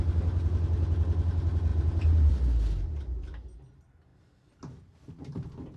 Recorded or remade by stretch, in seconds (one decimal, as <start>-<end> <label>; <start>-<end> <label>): 0.0-1.7 recorded; 1.7-2.3 remade; 2.3-5.8 recorded